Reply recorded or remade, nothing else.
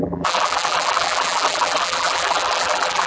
remade